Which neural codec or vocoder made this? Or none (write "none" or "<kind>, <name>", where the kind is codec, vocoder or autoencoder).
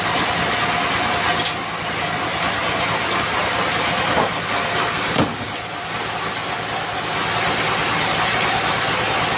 none